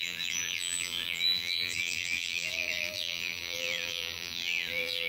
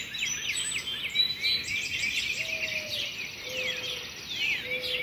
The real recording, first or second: second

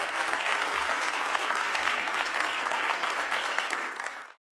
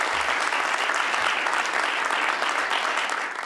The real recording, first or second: second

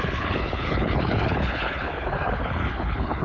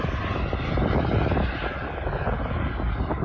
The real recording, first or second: second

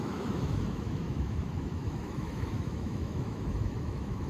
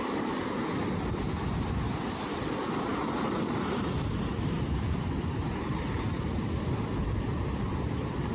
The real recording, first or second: second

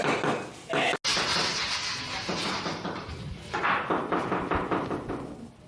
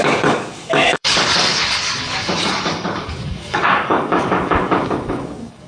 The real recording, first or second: first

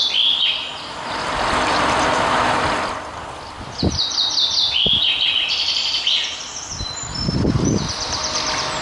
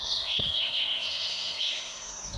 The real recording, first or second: first